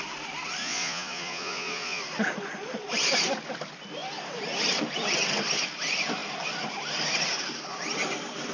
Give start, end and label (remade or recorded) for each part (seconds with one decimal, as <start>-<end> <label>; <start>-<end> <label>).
0.0-0.6 recorded; 0.6-2.0 remade; 2.0-8.5 recorded